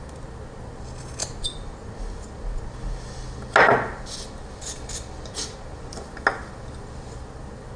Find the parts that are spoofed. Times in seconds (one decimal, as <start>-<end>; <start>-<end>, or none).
none